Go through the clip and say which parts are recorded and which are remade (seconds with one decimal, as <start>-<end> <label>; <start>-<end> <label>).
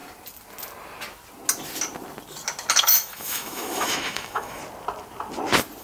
0.0-2.8 recorded; 2.8-4.6 remade; 4.6-5.8 recorded